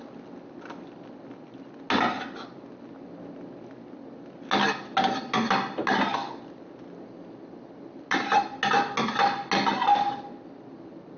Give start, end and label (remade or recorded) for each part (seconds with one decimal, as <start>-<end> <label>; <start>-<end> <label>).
0.0-11.2 recorded